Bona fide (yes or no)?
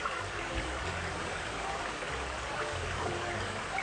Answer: no